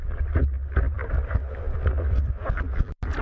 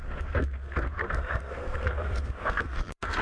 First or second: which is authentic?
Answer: first